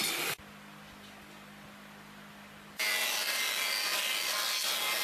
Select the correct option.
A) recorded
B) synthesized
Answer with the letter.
A